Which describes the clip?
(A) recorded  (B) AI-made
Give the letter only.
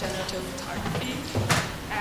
A